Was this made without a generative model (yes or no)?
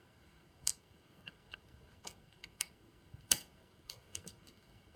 no